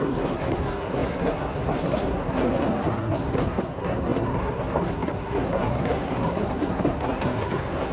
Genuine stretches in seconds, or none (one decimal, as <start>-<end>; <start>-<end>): none